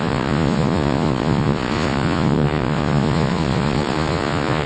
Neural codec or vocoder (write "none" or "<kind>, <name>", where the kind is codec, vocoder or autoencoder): vocoder, Vocos